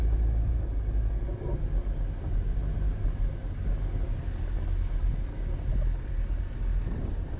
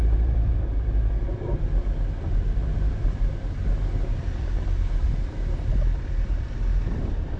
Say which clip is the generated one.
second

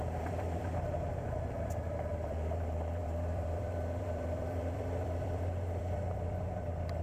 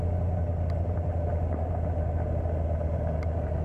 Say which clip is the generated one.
first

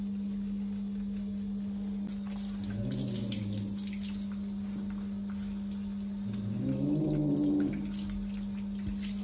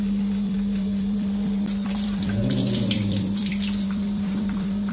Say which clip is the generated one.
second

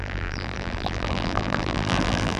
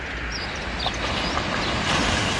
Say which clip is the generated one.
first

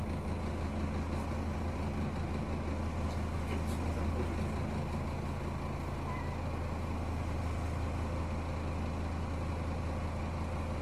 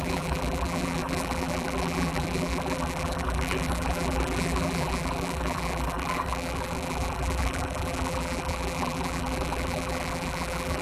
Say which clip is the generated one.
second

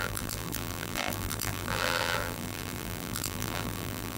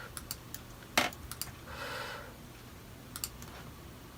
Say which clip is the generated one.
first